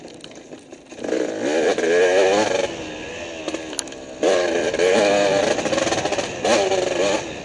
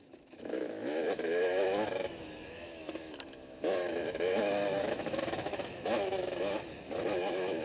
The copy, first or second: second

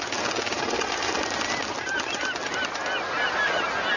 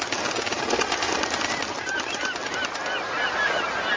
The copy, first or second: second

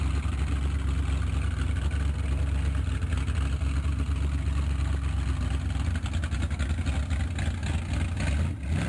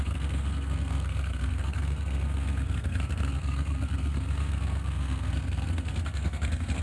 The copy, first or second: second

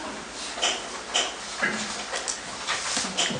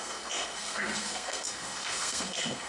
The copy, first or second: second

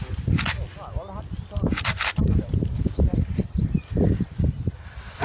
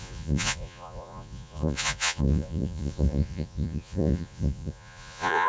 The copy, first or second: second